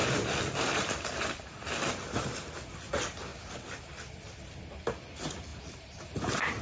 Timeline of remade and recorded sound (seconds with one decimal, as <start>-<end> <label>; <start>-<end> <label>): 0.0-1.9 remade; 1.9-3.3 recorded; 3.3-3.8 remade; 3.8-5.5 recorded; 5.5-6.6 remade